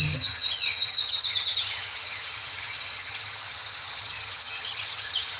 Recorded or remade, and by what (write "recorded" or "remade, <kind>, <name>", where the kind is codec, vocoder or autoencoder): remade, vocoder, HiFi-GAN